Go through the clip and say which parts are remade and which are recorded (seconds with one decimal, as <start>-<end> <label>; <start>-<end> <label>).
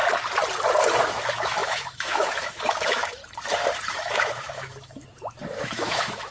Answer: 0.0-1.0 recorded; 1.0-3.2 remade; 3.2-3.9 recorded; 3.9-6.3 remade